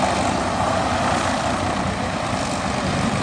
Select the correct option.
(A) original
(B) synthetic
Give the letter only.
A